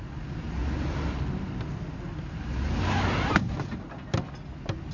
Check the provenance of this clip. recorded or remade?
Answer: recorded